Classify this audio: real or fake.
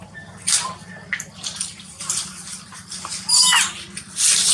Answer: real